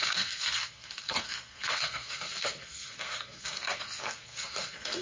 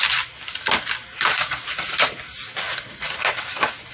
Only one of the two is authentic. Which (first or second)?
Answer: second